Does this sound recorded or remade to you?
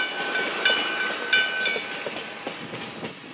recorded